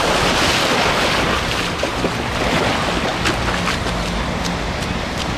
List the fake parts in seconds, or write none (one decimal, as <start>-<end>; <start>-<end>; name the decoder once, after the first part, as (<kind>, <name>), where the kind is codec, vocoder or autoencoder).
none